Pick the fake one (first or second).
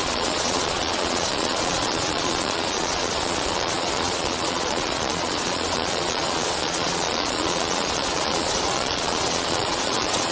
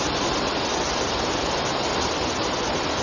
first